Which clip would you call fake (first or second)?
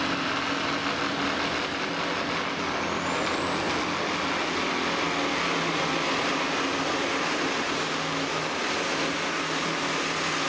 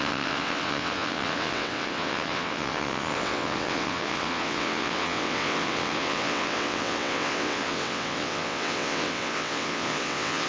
second